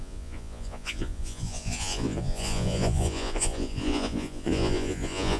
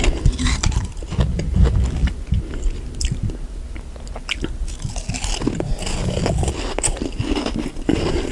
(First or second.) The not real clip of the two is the first